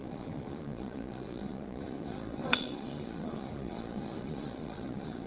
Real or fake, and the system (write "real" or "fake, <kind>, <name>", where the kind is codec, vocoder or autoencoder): fake, vocoder, Vocos